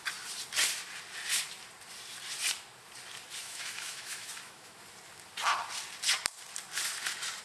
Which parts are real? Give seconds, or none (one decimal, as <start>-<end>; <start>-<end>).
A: 0.0-3.4; 4.8-7.4